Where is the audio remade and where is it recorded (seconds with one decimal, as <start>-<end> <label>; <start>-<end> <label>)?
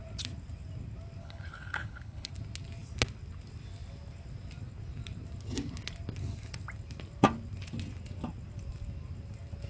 0.0-1.2 recorded; 1.2-2.3 remade; 2.3-9.7 recorded